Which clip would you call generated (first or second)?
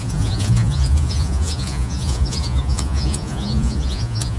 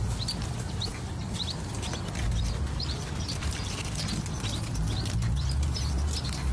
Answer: first